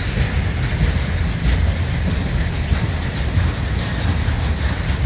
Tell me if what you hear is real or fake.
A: real